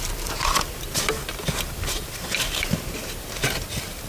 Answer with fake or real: real